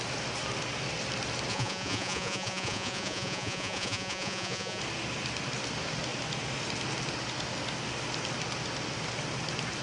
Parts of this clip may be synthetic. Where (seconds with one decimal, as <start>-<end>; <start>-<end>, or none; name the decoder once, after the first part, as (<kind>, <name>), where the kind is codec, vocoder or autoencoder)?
1.5-4.8 (vocoder, Vocos)